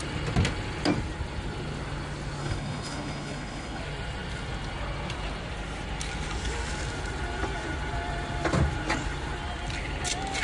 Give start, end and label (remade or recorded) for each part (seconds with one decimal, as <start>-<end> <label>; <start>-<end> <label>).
0.0-2.4 recorded; 2.4-3.8 remade; 3.8-10.4 recorded